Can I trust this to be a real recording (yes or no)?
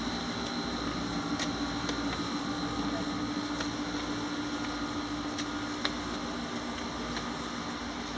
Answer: yes